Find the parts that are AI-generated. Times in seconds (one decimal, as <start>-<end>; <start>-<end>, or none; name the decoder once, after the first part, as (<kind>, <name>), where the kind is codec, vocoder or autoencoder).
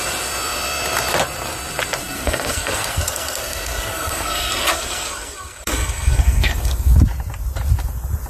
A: 2.0-7.0 (codec, SNAC)